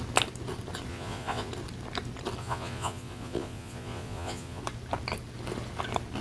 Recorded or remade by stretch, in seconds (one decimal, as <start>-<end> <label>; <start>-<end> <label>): 0.0-0.9 recorded; 0.9-1.5 remade; 1.5-2.4 recorded; 2.4-4.6 remade; 4.6-6.2 recorded